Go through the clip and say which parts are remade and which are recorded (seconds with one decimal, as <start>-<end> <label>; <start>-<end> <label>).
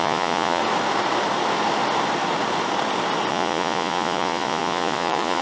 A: 0.0-0.6 remade; 0.6-3.3 recorded; 3.3-5.4 remade